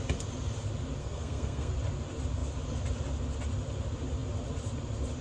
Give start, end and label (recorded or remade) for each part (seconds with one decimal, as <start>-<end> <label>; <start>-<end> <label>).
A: 0.0-1.0 recorded; 1.0-1.7 remade; 1.7-5.2 recorded